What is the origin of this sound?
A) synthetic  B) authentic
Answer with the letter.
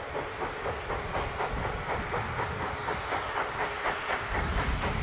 B